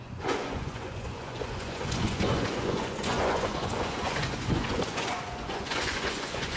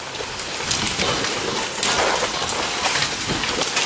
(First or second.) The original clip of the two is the second